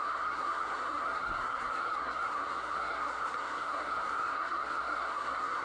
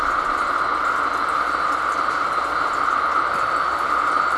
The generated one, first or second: first